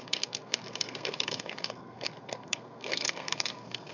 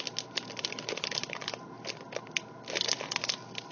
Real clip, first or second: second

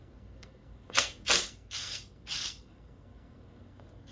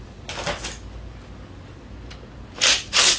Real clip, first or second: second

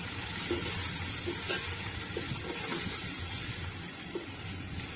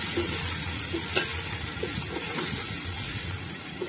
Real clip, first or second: first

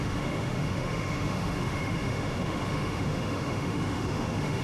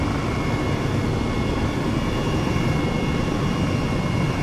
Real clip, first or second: second